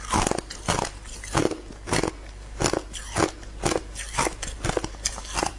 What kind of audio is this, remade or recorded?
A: recorded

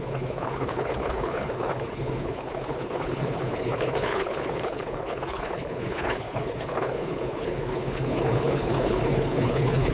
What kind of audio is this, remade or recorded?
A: remade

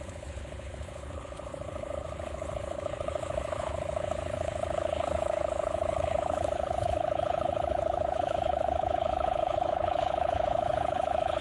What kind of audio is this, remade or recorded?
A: remade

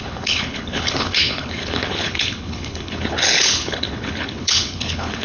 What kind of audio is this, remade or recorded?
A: remade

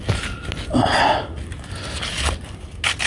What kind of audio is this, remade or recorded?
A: recorded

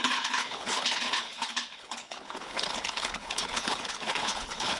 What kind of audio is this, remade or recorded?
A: remade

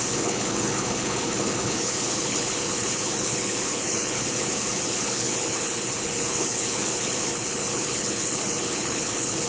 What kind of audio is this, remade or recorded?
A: remade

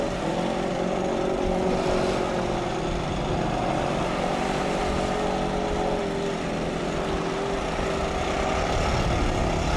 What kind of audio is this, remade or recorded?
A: recorded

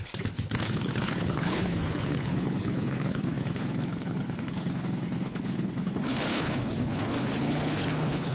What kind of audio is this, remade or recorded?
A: remade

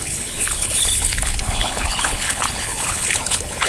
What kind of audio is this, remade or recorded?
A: remade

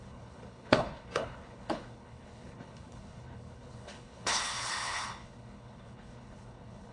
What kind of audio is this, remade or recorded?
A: remade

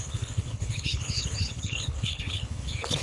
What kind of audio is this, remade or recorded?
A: remade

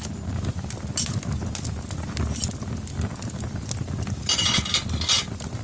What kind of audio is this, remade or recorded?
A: recorded